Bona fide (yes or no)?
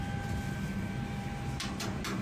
yes